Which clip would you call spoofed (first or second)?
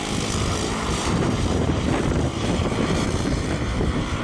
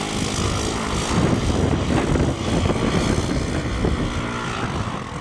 first